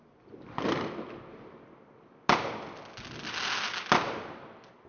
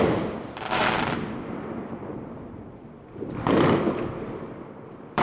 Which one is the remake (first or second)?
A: second